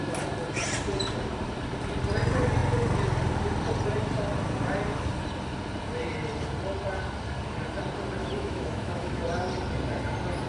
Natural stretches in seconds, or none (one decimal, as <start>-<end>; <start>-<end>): 0.0-8.2; 9.2-10.5